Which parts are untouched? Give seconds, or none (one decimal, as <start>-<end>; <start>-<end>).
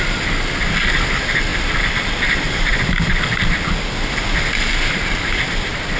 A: 0.0-1.5; 4.7-6.0